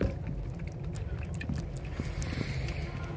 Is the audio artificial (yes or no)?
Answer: no